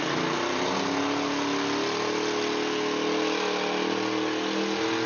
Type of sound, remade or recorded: recorded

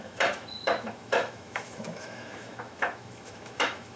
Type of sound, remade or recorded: remade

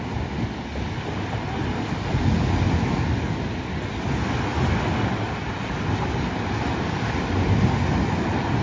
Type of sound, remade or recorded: recorded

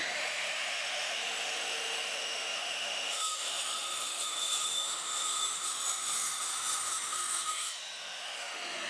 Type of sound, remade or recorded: remade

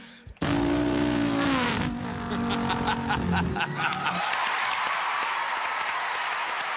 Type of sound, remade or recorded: recorded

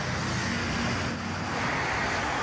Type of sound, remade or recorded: recorded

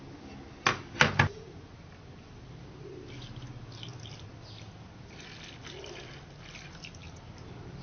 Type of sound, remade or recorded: recorded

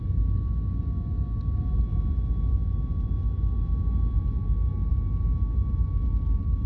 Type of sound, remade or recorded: recorded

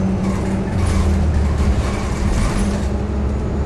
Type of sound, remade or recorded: recorded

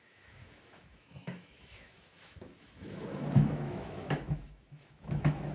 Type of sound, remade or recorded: remade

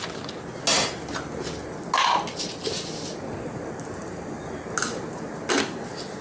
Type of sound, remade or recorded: recorded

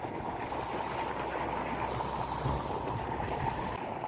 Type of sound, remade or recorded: recorded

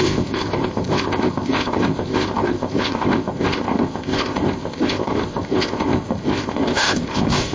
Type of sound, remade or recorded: remade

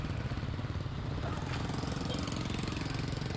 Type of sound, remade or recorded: recorded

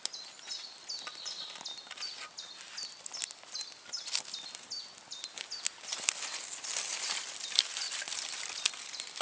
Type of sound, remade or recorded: recorded